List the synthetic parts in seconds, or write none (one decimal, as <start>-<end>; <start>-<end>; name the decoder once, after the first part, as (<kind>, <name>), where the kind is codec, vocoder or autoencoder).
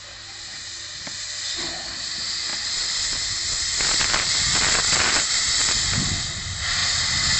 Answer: none